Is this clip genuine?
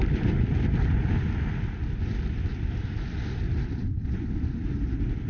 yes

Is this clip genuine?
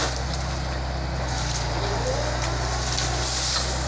yes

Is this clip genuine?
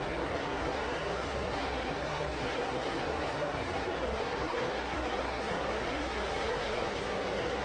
no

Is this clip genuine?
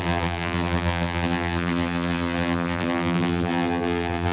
no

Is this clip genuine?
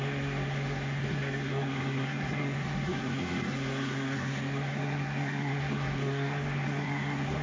no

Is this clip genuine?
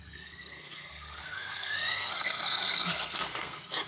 no